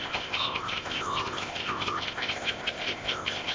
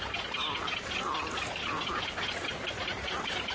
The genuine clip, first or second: second